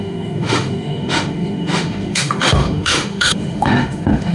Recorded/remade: remade